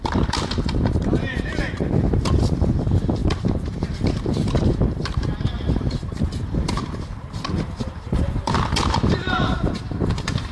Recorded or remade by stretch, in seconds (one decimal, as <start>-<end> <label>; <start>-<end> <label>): 0.0-10.5 remade